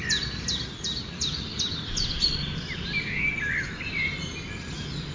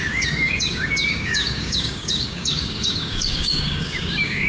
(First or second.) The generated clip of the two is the second